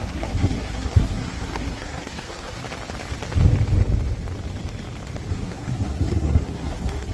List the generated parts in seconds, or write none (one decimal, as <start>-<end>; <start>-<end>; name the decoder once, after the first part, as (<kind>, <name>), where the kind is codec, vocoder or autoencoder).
0.0-2.6 (codec, SNAC); 5.3-7.1